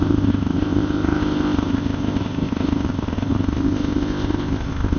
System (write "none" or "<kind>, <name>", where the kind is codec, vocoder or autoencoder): codec, ZipCodec